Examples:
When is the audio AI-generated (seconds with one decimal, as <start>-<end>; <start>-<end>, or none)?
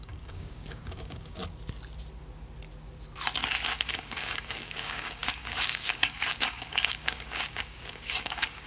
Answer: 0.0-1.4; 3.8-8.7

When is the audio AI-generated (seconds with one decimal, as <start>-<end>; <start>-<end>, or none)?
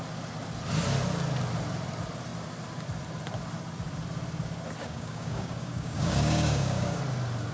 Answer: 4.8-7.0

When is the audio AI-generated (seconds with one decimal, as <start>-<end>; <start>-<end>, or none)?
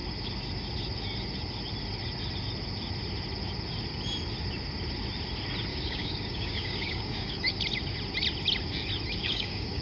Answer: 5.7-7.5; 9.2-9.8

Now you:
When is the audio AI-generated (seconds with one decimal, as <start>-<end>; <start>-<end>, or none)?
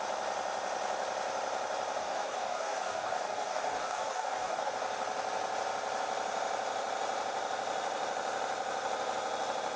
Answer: 2.0-4.7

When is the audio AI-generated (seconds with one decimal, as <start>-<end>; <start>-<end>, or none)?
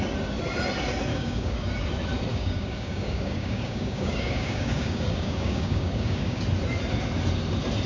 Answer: 1.1-1.7; 2.3-6.4